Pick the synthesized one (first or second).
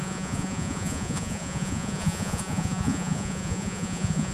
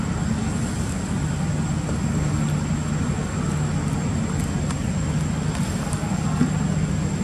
first